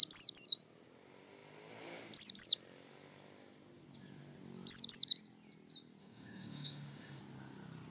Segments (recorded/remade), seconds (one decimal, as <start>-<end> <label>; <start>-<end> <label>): 0.0-6.0 recorded; 6.0-7.2 remade; 7.2-7.9 recorded